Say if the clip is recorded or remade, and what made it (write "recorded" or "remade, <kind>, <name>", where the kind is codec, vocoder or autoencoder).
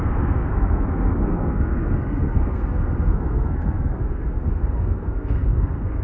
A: remade, codec, SNAC